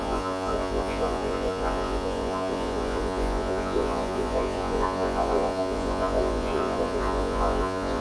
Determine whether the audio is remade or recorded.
remade